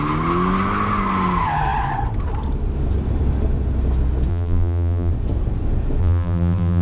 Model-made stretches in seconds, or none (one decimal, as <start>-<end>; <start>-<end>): 4.3-5.1; 6.0-6.8